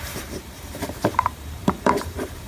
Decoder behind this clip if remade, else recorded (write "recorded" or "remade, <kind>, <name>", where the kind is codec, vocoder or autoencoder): remade, vocoder, BigVGAN v2